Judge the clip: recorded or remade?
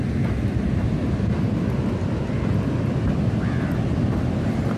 recorded